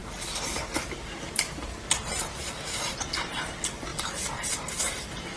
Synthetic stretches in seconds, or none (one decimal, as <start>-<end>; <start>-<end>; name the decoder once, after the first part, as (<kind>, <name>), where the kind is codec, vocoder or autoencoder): 0.0-2.4 (vocoder, BigVGAN v2); 3.9-4.8